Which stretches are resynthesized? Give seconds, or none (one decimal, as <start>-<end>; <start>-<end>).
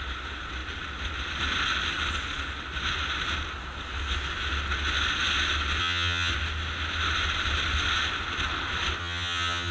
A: 5.8-6.3; 9.0-9.7